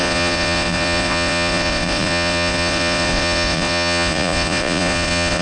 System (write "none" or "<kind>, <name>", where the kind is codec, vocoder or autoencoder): vocoder, Vocos